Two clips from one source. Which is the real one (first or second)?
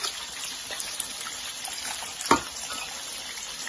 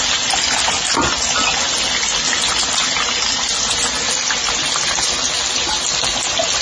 second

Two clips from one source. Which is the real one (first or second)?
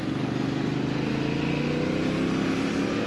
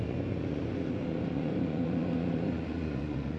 first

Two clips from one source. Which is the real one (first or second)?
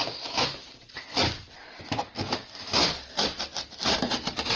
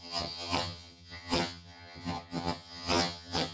first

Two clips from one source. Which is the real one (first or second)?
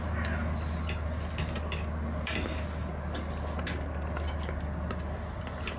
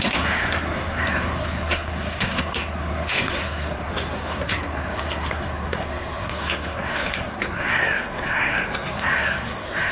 first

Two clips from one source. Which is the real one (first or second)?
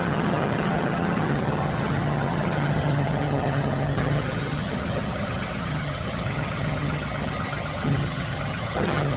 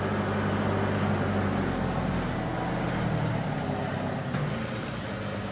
second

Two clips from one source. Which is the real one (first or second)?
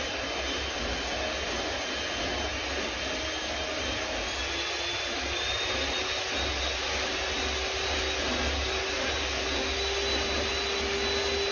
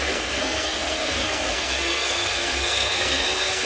first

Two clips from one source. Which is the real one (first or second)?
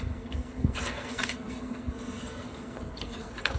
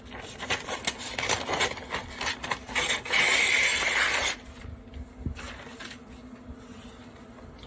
second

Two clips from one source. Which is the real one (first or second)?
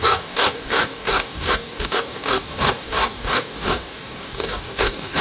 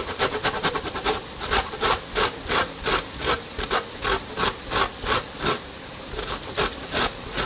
second